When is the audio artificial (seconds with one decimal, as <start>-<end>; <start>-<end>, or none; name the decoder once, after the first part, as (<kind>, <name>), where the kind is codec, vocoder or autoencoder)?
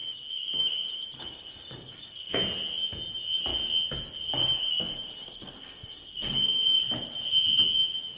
0.0-2.3 (codec, DAC); 4.4-6.8